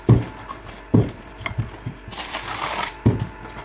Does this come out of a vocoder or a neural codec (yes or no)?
no